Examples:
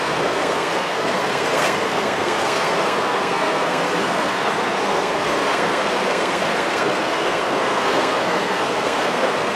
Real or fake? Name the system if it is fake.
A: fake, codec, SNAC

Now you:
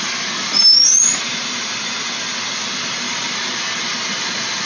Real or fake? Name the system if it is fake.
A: real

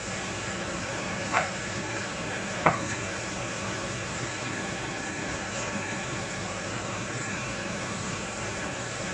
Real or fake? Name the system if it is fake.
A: fake, codec, SNAC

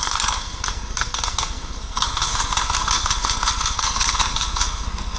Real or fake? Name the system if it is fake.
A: fake, codec, SNAC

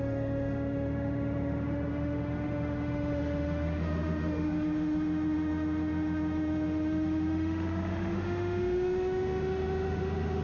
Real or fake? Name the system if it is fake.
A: fake, autoencoder, DAC-VAE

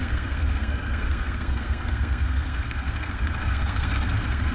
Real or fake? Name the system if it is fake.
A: fake, codec, SNAC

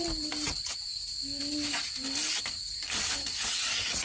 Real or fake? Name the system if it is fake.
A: real